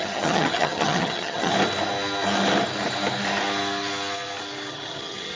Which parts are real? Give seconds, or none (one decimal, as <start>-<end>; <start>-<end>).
1.5-4.7